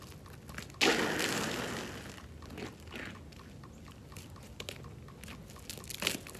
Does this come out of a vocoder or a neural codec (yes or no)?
no